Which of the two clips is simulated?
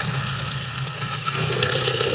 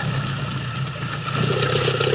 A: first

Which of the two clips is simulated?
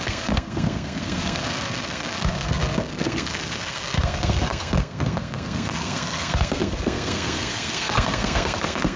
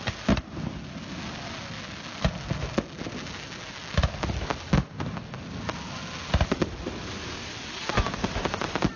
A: first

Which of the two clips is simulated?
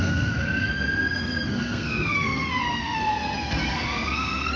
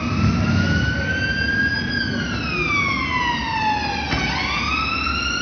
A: first